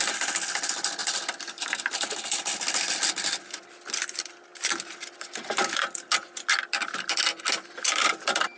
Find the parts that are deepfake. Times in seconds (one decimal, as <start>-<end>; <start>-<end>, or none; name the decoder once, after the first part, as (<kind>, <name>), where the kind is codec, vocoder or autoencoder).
none